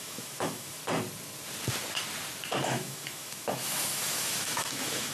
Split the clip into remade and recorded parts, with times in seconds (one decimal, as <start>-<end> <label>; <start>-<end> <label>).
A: 0.0-0.8 remade; 0.8-2.6 recorded; 2.6-5.1 remade